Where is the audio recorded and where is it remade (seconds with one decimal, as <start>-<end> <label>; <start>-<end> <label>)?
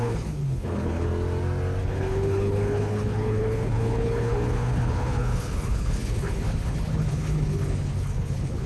0.0-1.1 remade; 1.1-1.8 recorded; 1.8-8.7 remade